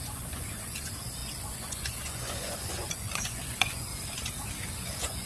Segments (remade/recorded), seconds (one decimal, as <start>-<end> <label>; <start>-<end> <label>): 0.0-3.9 remade; 3.9-4.7 recorded; 4.7-5.3 remade